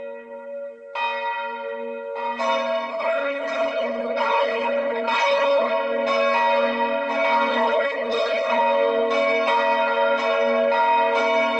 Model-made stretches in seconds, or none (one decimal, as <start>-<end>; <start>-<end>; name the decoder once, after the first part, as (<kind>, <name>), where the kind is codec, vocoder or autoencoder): 2.9-5.7 (codec, HILCodec); 7.5-8.6